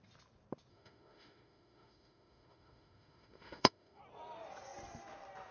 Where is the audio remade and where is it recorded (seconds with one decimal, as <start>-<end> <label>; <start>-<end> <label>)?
0.0-0.7 recorded; 0.7-4.0 remade; 4.0-5.5 recorded